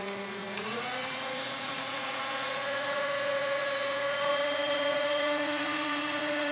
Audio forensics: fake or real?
fake